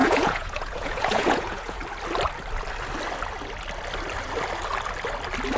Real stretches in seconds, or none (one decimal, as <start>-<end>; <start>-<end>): 1.8-5.6